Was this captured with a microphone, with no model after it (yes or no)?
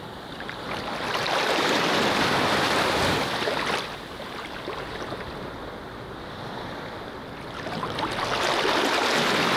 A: yes